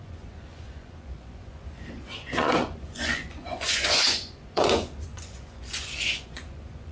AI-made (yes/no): yes